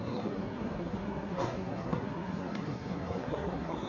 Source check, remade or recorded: remade